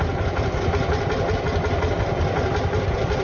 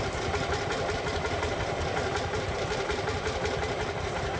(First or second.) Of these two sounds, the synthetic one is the second